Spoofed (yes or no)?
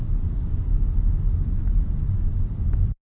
no